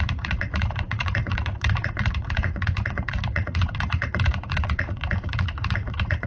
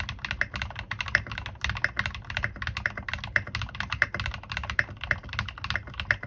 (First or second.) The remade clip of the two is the first